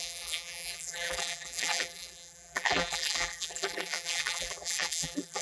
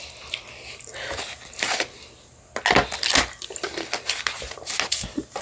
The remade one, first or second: first